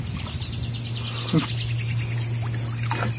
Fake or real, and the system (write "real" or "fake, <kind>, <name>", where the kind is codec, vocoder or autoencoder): real